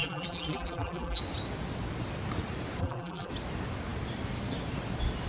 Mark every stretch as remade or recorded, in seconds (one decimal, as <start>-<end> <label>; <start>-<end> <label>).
0.0-1.2 remade; 1.2-2.8 recorded; 2.8-3.3 remade; 3.3-5.3 recorded